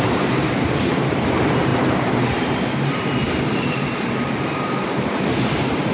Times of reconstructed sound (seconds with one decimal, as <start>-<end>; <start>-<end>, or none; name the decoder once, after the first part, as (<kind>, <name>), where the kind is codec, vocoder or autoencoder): 0.0-5.9 (vocoder, BigVGAN v2)